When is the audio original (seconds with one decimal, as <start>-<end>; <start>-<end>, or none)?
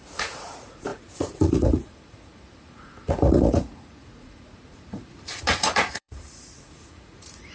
none